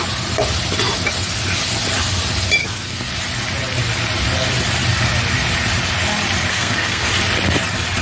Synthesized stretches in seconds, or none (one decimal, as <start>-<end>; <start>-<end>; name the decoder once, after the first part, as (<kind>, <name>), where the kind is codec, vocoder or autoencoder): 2.6-3.1 (codec, SNAC); 6.5-7.1